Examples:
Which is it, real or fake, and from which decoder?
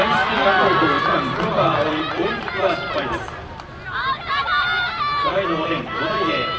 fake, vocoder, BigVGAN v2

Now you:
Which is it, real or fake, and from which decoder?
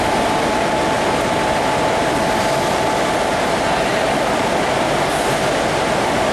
fake, vocoder, BigVGAN v2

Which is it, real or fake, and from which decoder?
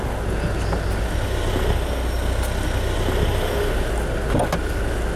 real